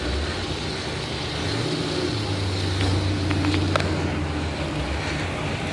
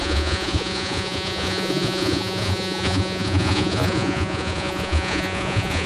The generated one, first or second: second